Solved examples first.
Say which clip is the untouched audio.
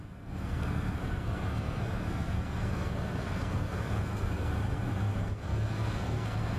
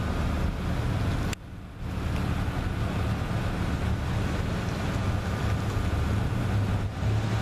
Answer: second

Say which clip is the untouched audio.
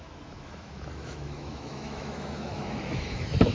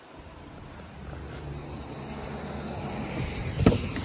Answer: second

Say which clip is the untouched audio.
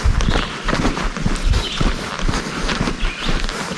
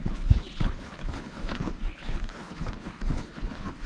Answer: first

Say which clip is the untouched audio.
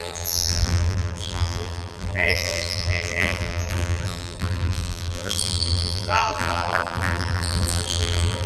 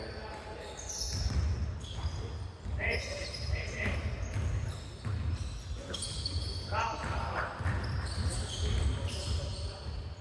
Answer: second